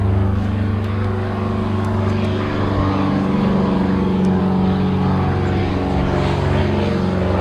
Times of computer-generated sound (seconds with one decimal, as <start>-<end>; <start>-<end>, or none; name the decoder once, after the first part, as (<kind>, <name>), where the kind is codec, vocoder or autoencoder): 0.0-4.4 (codec, DAC); 5.6-6.6